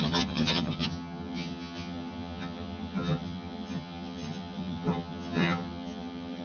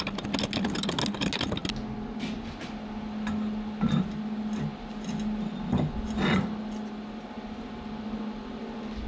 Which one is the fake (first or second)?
first